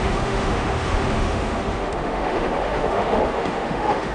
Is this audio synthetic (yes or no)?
yes